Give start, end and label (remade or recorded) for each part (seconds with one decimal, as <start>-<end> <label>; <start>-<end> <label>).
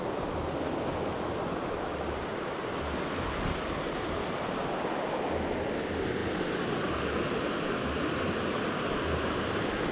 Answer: 0.0-9.9 recorded